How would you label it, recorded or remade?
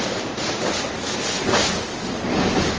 recorded